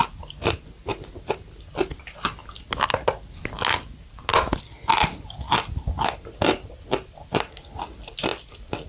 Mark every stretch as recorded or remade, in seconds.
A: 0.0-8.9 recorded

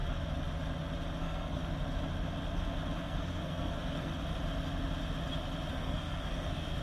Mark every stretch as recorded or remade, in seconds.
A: 0.0-1.2 recorded; 1.2-1.6 remade; 1.6-3.0 recorded; 3.0-4.1 remade; 4.1-5.7 recorded; 5.7-6.8 remade

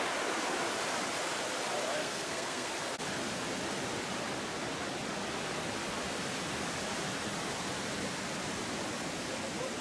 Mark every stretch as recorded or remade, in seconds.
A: 0.0-2.0 recorded; 2.0-2.7 remade; 2.7-9.8 recorded

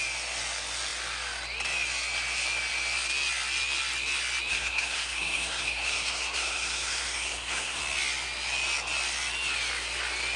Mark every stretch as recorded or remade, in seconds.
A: 0.0-4.5 recorded; 4.5-7.8 remade; 7.8-10.4 recorded

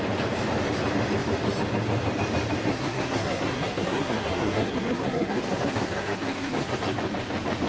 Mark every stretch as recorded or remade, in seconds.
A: 0.0-2.7 recorded; 2.7-6.7 remade; 6.7-7.7 recorded

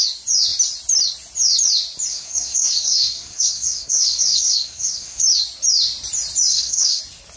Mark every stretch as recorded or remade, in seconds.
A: 0.0-2.1 recorded; 2.1-5.2 remade; 5.2-6.5 recorded; 6.5-7.0 remade; 7.0-7.4 recorded

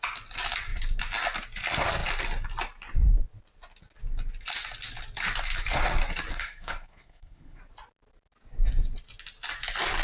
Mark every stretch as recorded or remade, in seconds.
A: 0.0-6.3 recorded; 6.3-7.6 remade; 7.6-10.0 recorded